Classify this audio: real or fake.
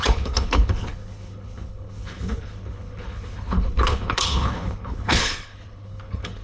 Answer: fake